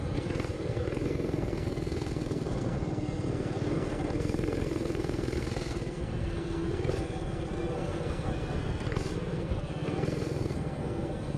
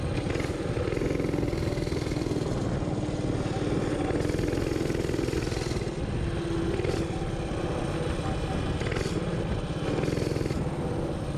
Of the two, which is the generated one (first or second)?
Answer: first